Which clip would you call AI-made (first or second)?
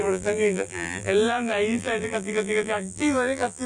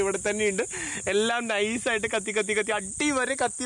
first